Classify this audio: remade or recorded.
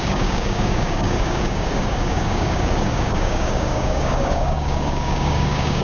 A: remade